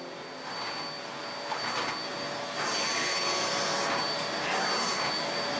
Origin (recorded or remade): recorded